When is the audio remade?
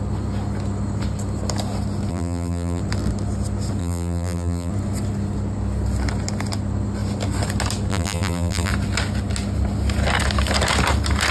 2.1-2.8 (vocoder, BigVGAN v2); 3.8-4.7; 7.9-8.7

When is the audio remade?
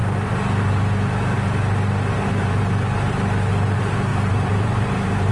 4.1-5.3 (vocoder, BigVGAN v2)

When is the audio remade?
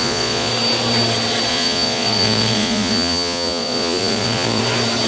0.0-0.5 (vocoder, Vocos); 1.5-4.6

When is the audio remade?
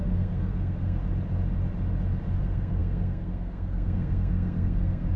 0.0-1.0 (codec, SNAC); 2.4-5.2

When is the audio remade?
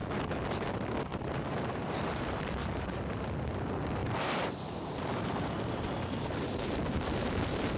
1.1-3.0 (vocoder, BigVGAN v2); 4.0-7.8